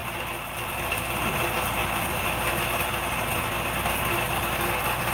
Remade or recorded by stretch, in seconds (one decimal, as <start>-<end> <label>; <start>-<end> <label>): 0.0-5.1 recorded